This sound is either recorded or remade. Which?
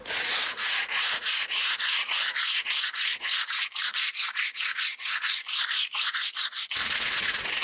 remade